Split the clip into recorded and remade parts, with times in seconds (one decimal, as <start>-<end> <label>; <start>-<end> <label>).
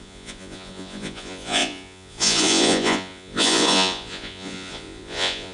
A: 0.0-5.5 remade